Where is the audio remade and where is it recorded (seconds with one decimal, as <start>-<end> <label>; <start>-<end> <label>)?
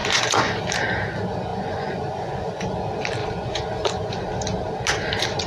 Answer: 0.0-0.6 remade; 0.6-1.5 recorded; 1.5-2.6 remade; 2.6-3.2 recorded; 3.2-4.2 remade; 4.2-5.5 recorded